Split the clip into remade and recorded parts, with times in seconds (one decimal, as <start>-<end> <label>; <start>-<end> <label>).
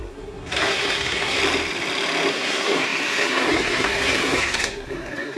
0.0-1.4 remade; 1.4-2.3 recorded; 2.3-5.4 remade